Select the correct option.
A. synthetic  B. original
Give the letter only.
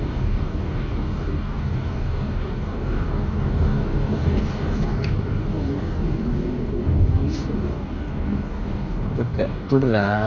A